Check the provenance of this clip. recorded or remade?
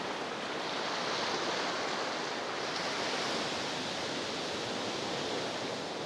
recorded